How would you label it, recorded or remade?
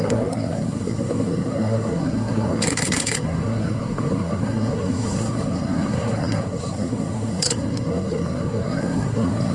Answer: remade